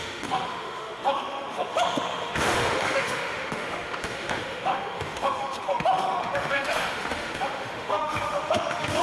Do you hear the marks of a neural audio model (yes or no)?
yes